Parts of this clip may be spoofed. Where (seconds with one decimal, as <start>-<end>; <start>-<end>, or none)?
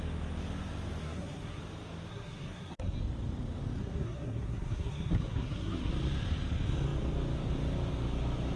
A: 1.0-1.6; 2.1-3.0; 3.8-5.9